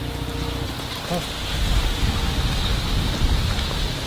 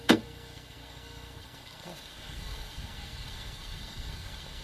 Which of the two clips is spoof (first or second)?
second